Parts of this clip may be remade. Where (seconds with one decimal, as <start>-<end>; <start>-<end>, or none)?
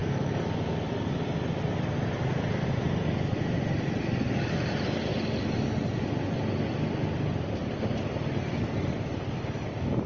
none